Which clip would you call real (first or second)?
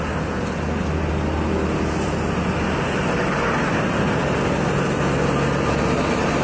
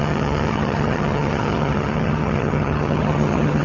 first